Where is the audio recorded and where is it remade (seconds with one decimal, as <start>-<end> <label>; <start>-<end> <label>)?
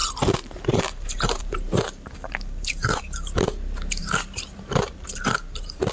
0.0-3.0 remade; 3.0-4.0 recorded; 4.0-5.9 remade